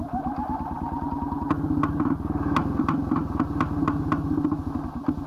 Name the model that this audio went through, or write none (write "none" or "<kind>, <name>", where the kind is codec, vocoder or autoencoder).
none